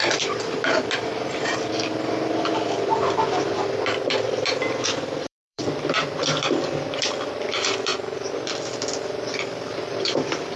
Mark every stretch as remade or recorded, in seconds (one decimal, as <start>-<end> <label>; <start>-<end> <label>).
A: 0.0-10.6 remade